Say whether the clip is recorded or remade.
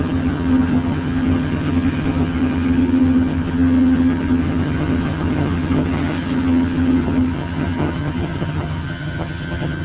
remade